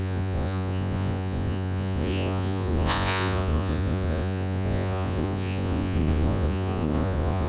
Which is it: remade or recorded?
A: remade